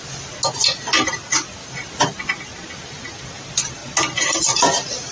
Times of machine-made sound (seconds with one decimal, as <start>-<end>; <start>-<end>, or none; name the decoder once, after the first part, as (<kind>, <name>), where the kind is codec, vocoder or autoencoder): none